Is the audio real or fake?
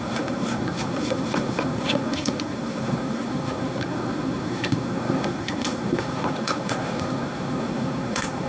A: fake